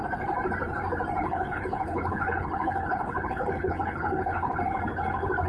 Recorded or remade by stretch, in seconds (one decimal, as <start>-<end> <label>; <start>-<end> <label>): 0.0-1.2 recorded; 1.2-4.5 remade; 4.5-5.5 recorded